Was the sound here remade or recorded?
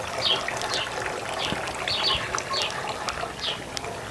recorded